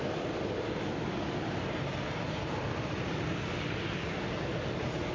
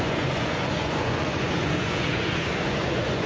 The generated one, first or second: second